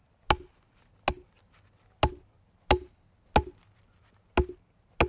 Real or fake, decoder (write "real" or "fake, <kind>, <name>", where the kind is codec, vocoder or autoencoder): real